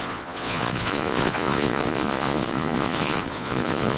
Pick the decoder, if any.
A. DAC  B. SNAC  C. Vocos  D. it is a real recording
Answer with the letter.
C